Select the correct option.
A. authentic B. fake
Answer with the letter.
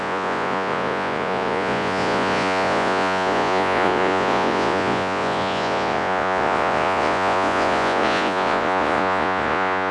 B